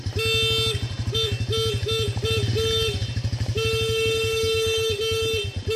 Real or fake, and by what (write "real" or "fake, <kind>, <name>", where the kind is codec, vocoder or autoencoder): real